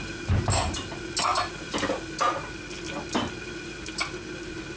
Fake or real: real